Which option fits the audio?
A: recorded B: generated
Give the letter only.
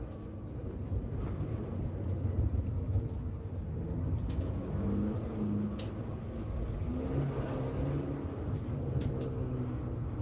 A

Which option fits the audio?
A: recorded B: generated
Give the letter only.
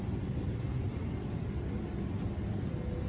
A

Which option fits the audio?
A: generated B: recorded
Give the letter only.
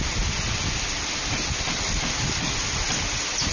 B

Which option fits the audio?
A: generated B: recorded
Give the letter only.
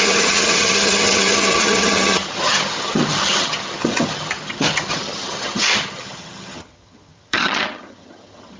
A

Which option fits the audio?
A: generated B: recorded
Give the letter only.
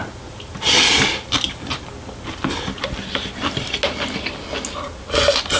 B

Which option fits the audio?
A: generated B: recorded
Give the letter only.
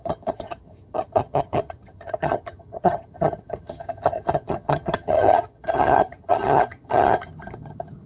A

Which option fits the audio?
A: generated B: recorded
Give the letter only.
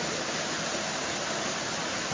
B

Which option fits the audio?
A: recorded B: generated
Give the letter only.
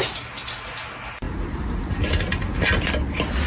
A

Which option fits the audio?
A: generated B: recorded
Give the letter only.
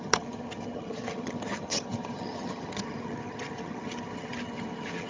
A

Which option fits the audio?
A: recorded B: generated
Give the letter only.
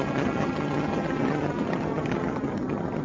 B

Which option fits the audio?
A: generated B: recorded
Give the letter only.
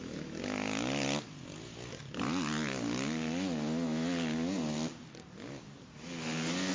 B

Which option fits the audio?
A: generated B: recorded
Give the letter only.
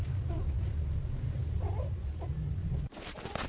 B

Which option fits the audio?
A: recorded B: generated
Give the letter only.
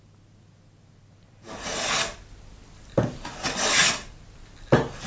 A